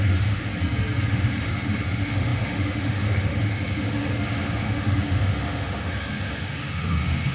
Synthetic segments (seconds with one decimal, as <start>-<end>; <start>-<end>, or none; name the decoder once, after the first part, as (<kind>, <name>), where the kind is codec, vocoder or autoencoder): 0.0-0.5 (autoencoder, DAC-VAE); 1.1-7.3